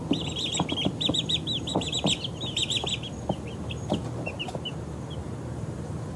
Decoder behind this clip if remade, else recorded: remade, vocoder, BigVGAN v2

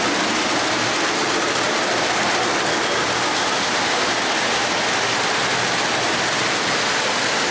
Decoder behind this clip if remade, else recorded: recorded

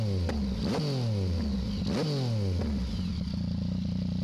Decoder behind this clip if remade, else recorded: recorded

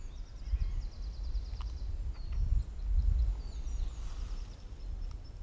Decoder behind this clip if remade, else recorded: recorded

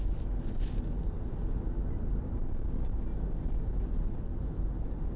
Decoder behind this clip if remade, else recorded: recorded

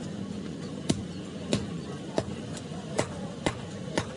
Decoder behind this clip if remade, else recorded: remade, vocoder, Vocos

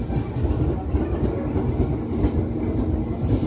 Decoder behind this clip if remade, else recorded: recorded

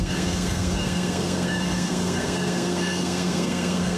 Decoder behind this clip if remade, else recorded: remade, codec, SNAC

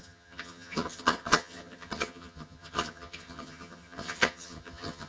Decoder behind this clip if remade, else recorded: remade, vocoder, HiFi-GAN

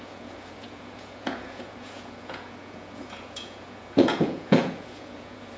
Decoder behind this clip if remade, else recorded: remade, vocoder, Vocos